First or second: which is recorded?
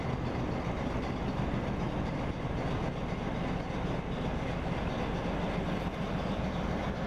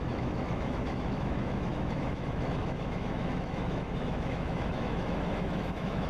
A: first